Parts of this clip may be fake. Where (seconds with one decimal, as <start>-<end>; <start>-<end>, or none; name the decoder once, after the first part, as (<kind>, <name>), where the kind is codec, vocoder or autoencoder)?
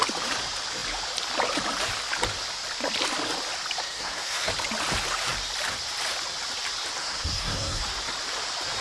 3.8-4.5 (codec, SNAC); 7.0-7.8